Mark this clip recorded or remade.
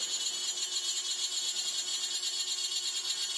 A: recorded